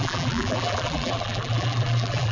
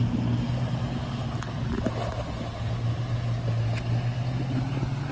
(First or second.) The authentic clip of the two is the second